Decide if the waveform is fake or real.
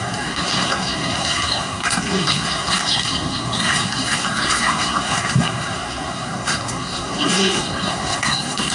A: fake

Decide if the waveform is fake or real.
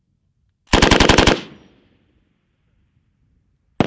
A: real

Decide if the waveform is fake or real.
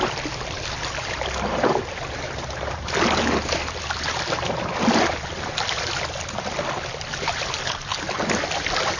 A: fake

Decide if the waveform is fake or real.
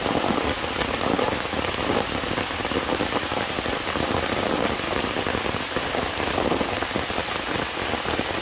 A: real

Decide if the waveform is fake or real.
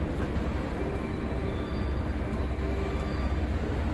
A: real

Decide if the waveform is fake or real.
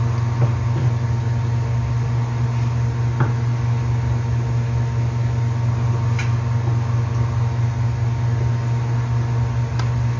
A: real